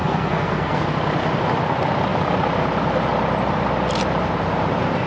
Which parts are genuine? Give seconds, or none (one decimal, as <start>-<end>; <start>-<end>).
0.8-5.1